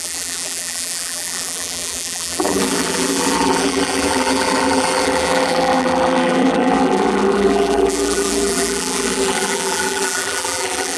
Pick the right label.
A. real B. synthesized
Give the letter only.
B